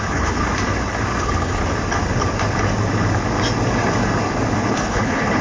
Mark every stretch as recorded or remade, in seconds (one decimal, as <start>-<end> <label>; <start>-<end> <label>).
0.0-0.4 remade; 0.4-1.2 recorded; 1.2-1.6 remade; 1.6-4.7 recorded; 4.7-5.4 remade